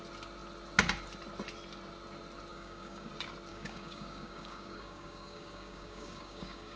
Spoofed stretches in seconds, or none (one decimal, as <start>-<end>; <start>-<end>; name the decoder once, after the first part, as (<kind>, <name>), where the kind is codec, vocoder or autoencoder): 2.5-3.1 (codec, DAC); 3.5-6.8